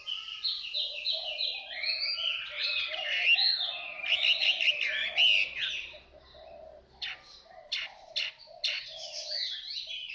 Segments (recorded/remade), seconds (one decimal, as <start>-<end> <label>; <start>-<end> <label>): 0.0-10.1 recorded